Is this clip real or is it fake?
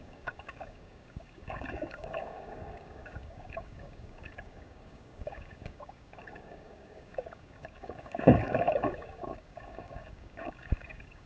fake